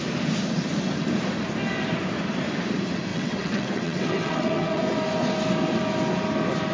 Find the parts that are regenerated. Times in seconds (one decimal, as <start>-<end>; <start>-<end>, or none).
3.1-4.8